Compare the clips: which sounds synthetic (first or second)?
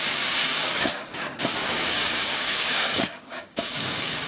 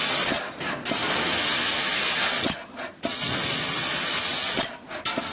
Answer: first